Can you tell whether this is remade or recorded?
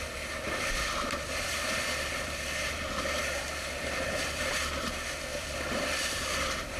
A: remade